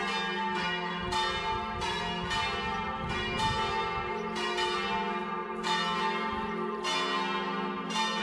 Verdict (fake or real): real